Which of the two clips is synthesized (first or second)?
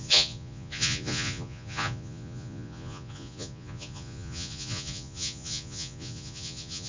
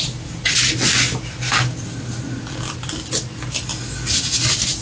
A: first